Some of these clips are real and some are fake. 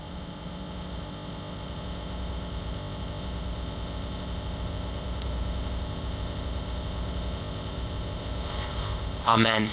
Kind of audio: fake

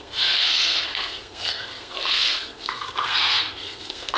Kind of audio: fake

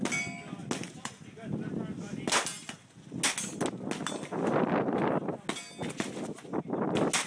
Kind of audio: real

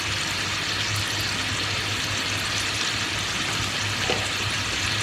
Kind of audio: real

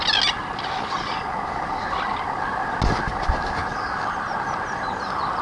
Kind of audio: real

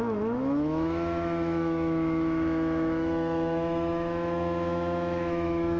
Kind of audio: fake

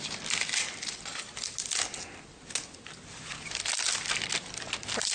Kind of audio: real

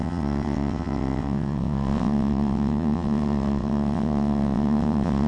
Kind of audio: fake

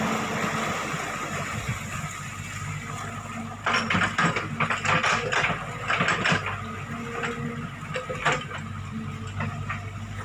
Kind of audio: real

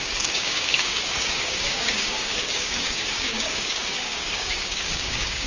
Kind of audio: fake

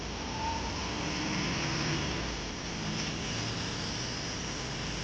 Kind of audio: real